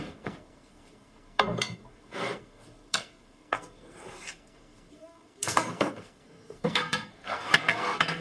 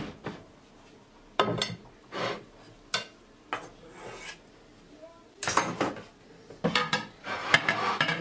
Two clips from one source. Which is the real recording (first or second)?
second